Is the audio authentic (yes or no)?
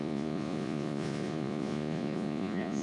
no